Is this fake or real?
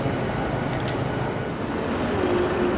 real